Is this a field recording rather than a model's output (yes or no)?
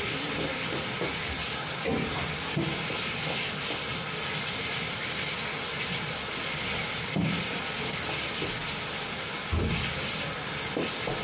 yes